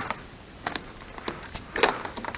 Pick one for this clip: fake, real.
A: real